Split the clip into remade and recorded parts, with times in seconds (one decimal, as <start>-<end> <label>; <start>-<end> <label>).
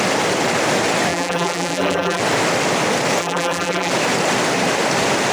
0.0-1.1 recorded; 1.1-2.2 remade; 2.2-3.2 recorded; 3.2-3.9 remade; 3.9-5.3 recorded